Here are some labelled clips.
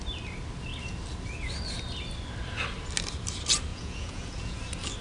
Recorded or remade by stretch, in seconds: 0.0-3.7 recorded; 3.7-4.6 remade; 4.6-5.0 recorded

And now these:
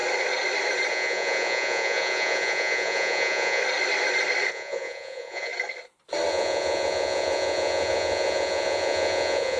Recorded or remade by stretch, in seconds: 0.0-0.9 recorded; 0.9-3.6 remade; 3.6-4.5 recorded; 4.5-5.5 remade; 5.5-6.3 recorded; 6.3-9.6 remade